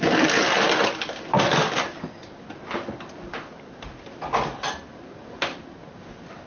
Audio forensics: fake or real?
real